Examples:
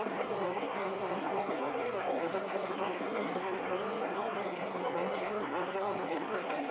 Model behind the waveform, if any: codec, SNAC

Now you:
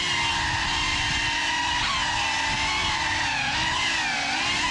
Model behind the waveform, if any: none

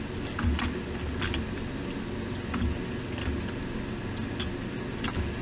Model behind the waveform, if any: none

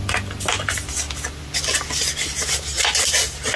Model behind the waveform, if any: none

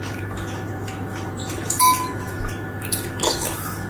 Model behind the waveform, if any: autoencoder, DAC-VAE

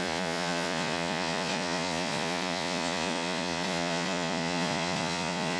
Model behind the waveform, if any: vocoder, Vocos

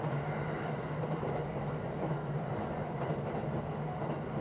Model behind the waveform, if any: none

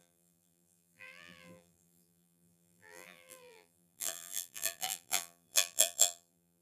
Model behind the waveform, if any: vocoder, BigVGAN v2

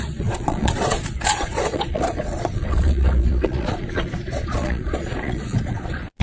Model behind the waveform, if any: vocoder, Vocos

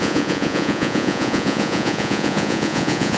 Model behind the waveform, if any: vocoder, Vocos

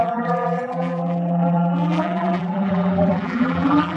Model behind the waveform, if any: vocoder, BigVGAN v2